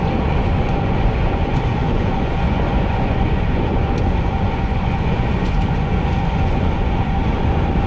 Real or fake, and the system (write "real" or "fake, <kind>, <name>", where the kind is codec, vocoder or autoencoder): fake, vocoder, Vocos